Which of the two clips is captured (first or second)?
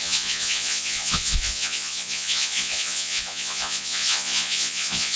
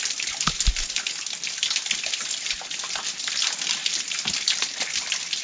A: second